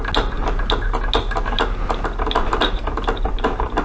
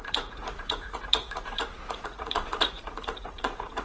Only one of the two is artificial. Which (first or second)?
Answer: second